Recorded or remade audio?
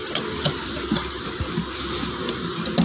recorded